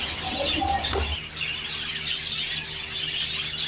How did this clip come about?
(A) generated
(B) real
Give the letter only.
B